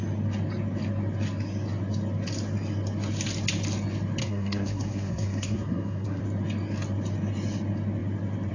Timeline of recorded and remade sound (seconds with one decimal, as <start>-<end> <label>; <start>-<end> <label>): 0.0-4.2 recorded; 4.2-6.2 remade; 6.2-8.5 recorded